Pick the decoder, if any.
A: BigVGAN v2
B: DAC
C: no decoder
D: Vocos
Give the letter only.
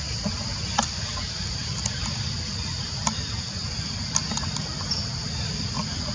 C